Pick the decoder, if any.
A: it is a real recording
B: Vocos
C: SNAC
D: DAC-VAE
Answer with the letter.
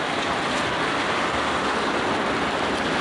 A